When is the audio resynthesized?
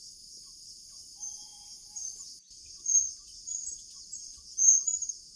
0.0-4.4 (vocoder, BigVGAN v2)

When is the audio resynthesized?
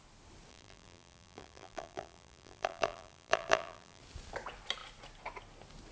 0.5-4.0 (vocoder, BigVGAN v2)